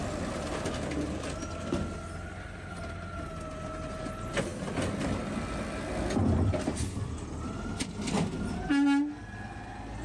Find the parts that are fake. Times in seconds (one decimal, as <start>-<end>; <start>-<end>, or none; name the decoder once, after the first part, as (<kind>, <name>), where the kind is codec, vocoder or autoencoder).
none